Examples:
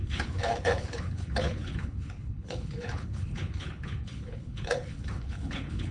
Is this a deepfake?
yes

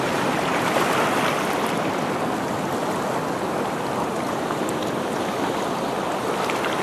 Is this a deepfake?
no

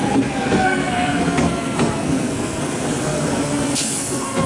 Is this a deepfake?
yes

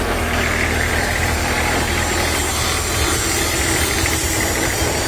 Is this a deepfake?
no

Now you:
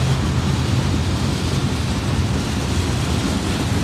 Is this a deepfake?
no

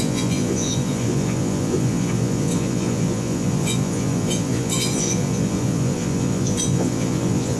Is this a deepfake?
yes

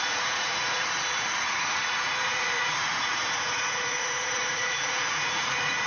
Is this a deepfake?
yes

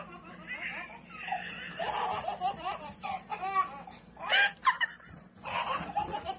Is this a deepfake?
yes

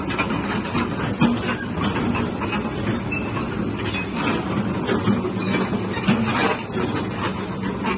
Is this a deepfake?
no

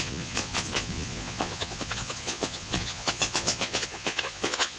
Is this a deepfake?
yes